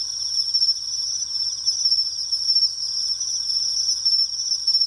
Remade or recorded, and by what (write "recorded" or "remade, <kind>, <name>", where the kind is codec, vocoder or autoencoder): remade, vocoder, BigVGAN v2